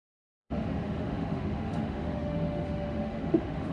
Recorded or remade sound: remade